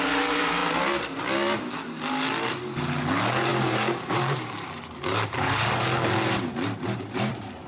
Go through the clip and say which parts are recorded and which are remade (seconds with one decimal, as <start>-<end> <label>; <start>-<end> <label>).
0.0-0.6 remade; 0.6-2.5 recorded; 2.5-7.7 remade